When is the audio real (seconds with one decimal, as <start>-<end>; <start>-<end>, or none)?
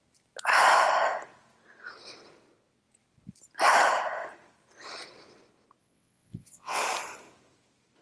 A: 0.0-5.8; 6.8-8.0